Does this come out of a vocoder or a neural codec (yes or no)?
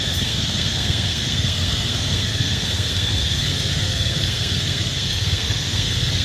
yes